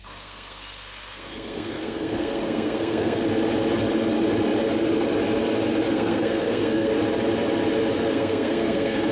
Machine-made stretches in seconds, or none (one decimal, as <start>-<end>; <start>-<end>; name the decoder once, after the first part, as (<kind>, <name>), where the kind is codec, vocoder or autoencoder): 0.0-3.2 (codec, SNAC); 5.9-6.9; 8.1-9.1